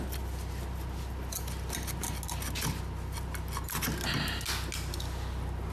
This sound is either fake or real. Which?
real